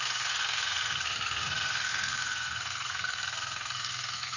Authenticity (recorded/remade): remade